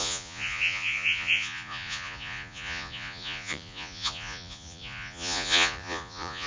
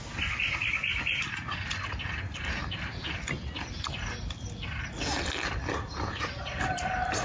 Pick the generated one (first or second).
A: first